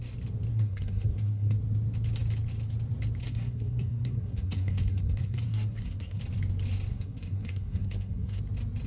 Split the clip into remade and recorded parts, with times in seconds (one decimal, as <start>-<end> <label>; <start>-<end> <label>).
0.0-0.5 recorded; 0.5-1.6 remade; 1.6-3.2 recorded; 3.2-6.2 remade; 6.2-6.9 recorded; 6.9-8.4 remade; 8.4-8.9 recorded

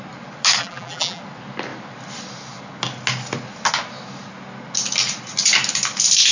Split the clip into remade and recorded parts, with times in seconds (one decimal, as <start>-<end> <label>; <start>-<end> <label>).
0.0-0.6 recorded; 0.6-1.2 remade; 1.2-6.3 recorded

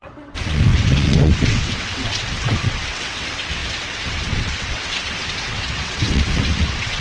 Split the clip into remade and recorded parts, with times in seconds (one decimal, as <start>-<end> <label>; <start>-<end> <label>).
0.0-7.0 remade